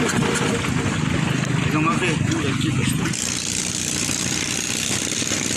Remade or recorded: recorded